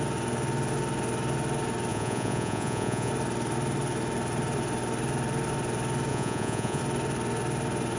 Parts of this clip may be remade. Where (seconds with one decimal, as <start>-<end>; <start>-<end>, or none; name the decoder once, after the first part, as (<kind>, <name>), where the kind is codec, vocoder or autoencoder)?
1.9-3.1 (vocoder, Vocos); 6.1-6.8